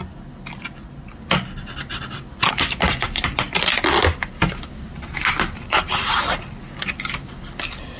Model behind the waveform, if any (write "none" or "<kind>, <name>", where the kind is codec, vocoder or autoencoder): none